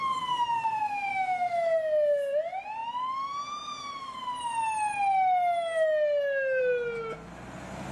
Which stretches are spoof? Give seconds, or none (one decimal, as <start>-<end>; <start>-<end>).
1.1-1.8